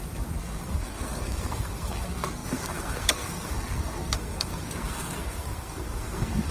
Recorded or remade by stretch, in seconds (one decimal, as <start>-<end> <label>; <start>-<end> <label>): 0.0-6.5 remade